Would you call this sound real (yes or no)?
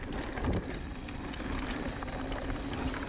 yes